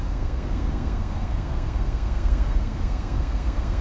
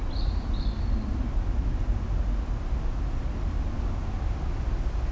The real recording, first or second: second